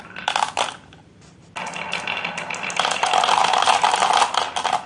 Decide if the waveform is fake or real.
real